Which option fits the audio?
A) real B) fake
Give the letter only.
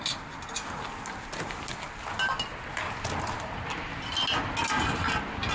A